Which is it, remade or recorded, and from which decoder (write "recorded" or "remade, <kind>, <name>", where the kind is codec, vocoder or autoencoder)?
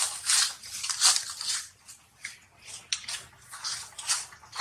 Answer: recorded